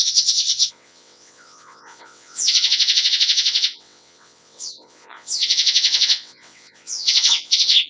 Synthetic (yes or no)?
yes